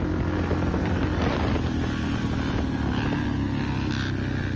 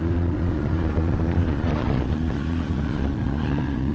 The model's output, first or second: second